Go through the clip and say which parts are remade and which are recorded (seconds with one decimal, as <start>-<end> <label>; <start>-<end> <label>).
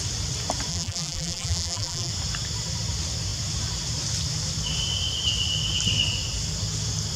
0.0-0.7 recorded; 0.7-2.1 remade; 2.1-7.2 recorded